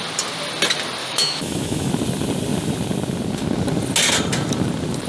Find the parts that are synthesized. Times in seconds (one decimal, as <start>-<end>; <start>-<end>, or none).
1.0-1.9